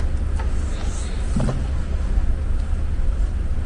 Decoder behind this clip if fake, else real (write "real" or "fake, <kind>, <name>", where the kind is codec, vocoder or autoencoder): real